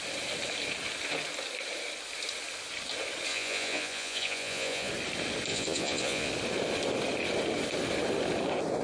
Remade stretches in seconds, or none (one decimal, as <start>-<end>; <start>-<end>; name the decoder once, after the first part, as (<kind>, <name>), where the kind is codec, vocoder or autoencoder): 3.3-4.9 (vocoder, Vocos); 5.5-6.3